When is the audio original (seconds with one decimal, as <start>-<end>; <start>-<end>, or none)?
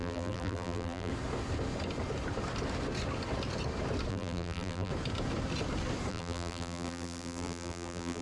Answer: 1.1-4.1; 4.9-6.1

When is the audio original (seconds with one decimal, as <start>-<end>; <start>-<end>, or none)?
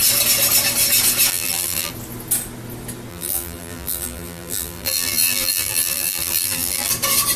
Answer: 0.0-1.3; 1.9-3.1; 6.9-7.4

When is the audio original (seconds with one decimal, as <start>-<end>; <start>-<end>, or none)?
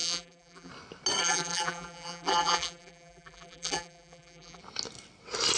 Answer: 0.7-1.2; 4.6-5.6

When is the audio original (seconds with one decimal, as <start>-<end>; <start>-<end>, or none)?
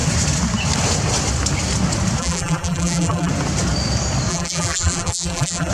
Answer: 0.0-2.2; 3.3-4.3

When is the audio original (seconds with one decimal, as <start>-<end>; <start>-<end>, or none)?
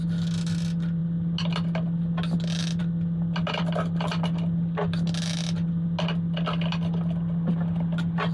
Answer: 0.0-8.3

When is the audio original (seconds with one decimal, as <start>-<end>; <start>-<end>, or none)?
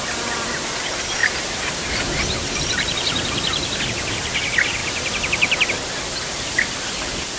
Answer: 0.0-1.2; 3.8-4.8; 5.7-7.4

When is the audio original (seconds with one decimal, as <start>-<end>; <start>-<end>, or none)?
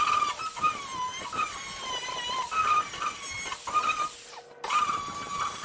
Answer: 0.0-5.6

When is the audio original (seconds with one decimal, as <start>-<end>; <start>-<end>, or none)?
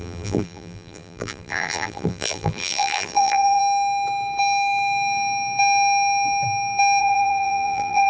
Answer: 3.6-7.0